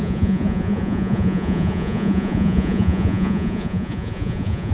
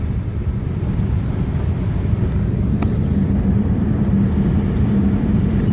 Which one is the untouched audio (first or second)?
second